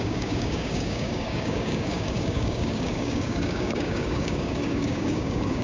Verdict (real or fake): fake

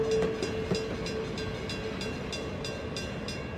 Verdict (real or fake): real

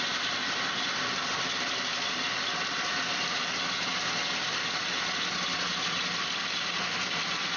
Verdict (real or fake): real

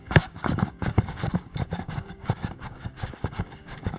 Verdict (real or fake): fake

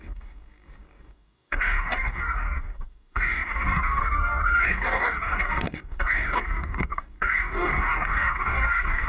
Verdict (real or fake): fake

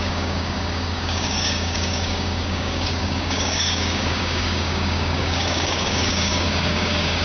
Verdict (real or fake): fake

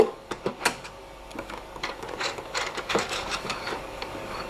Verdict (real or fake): fake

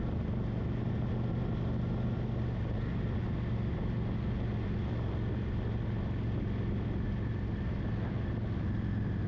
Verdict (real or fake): real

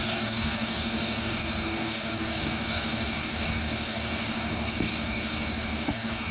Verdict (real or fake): fake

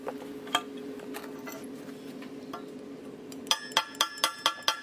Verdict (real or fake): real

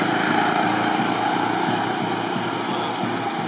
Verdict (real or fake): real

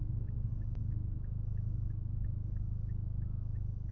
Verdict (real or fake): fake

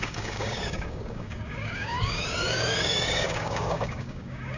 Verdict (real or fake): fake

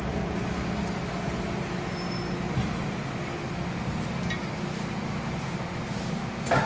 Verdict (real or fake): real